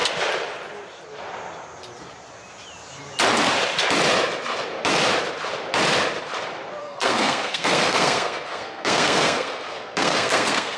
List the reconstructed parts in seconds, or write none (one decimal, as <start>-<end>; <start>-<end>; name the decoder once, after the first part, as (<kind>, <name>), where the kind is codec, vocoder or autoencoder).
6.8-10.8 (codec, SNAC)